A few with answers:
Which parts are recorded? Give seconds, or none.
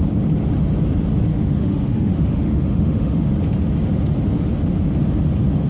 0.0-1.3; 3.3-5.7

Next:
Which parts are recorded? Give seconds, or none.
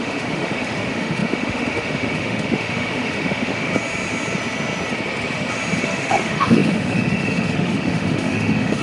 3.7-5.8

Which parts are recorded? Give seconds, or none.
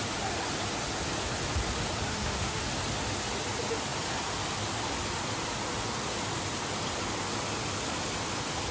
0.0-2.1; 2.6-8.7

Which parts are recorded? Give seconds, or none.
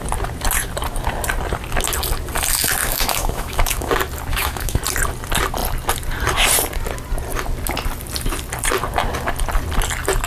0.0-2.8; 3.9-4.3; 4.8-10.3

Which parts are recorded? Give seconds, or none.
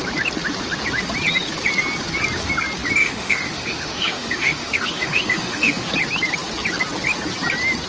0.0-3.0; 5.9-7.9